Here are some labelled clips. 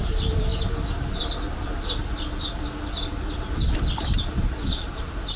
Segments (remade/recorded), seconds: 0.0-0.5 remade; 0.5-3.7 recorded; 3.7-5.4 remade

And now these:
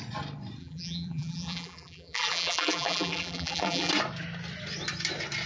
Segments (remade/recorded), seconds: 0.0-0.6 recorded; 0.6-3.9 remade; 3.9-5.5 recorded

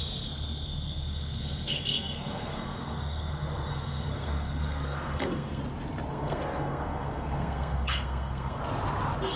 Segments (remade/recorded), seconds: 0.0-5.6 remade; 5.6-6.1 recorded; 6.1-8.6 remade; 8.6-9.4 recorded